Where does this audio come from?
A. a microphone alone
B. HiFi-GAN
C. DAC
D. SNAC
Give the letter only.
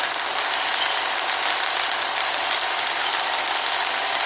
A